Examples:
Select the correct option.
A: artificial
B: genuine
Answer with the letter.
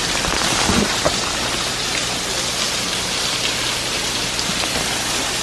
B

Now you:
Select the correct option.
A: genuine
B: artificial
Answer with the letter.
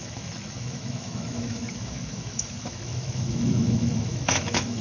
B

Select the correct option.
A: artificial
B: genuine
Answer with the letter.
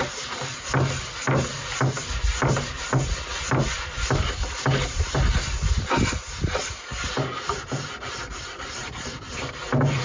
B